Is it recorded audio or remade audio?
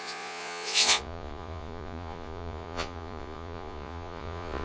remade